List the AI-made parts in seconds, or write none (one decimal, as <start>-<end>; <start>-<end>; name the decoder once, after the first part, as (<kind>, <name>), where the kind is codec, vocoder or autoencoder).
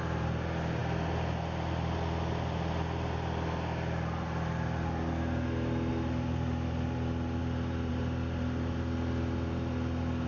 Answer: none